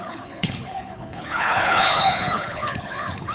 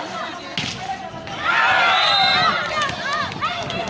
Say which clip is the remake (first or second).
first